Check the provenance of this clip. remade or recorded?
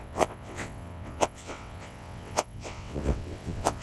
remade